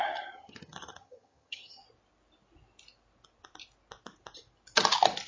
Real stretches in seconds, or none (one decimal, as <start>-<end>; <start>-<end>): 1.8-5.3